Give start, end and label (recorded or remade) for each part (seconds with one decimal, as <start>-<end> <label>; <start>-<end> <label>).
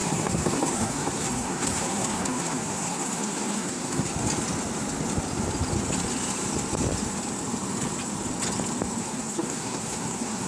0.0-4.1 remade; 4.1-9.0 recorded; 9.0-10.5 remade